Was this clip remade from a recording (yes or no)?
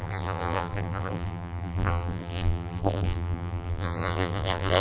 yes